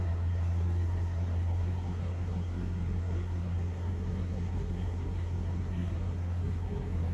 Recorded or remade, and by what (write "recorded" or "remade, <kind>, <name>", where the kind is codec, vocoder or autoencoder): remade, codec, SNAC